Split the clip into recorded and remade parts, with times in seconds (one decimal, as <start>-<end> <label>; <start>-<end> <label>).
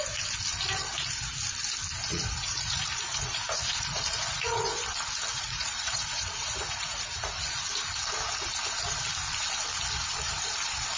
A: 0.0-2.1 recorded; 2.1-4.7 remade; 4.7-5.3 recorded; 5.3-7.6 remade; 7.6-11.0 recorded